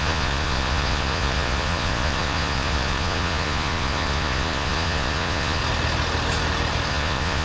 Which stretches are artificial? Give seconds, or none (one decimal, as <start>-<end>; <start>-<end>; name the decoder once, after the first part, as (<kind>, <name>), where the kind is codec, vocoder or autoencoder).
0.0-5.6 (vocoder, Vocos); 6.9-7.4